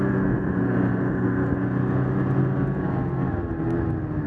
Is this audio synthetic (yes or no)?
no